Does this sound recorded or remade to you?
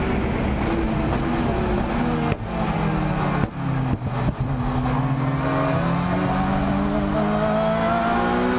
recorded